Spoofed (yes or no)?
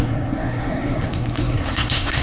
yes